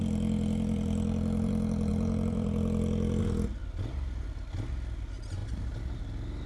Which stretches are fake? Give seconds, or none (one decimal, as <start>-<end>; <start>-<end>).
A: 0.0-1.5; 1.9-3.2; 3.6-4.2; 5.4-6.0